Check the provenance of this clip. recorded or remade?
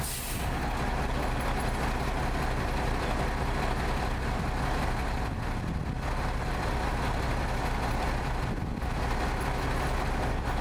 recorded